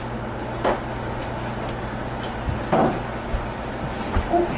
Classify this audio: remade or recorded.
recorded